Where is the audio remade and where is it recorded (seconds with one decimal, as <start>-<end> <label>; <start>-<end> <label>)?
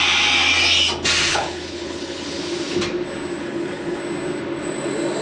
0.0-1.3 recorded; 1.3-2.4 remade; 2.4-3.4 recorded; 3.4-4.0 remade; 4.0-5.2 recorded